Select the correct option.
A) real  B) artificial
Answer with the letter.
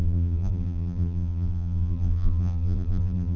B